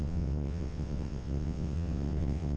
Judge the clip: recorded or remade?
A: remade